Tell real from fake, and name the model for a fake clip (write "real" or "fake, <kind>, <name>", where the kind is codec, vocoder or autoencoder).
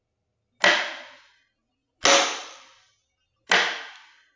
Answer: real